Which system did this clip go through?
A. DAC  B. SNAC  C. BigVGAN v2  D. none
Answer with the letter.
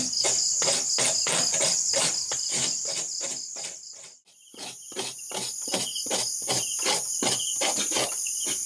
D